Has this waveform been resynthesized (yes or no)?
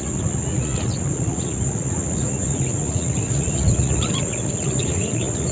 yes